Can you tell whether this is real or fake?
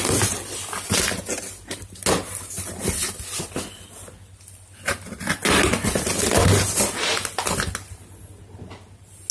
real